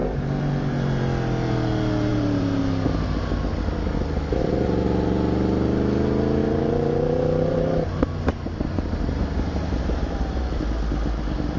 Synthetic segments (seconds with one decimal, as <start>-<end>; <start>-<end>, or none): 0.0-1.0; 2.1-2.6; 6.4-10.6